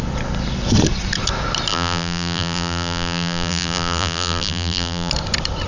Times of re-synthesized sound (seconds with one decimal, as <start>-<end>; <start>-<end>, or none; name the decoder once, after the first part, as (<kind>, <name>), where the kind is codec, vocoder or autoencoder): 1.7-5.1 (vocoder, BigVGAN v2)